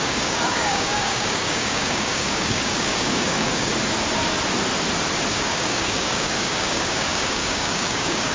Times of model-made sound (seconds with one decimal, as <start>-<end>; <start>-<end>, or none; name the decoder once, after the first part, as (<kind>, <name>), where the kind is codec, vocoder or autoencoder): 0.0-3.7 (codec, DAC); 5.3-8.3